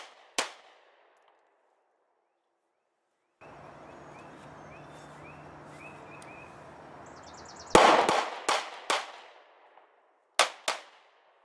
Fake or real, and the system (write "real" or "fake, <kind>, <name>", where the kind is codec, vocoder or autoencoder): real